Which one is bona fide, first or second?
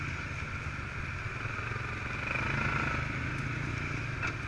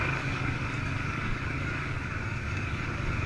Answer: first